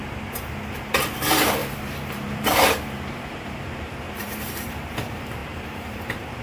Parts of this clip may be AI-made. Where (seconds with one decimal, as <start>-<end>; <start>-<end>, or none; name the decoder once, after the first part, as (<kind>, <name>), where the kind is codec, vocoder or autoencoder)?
0.9-6.4 (vocoder, BigVGAN v2)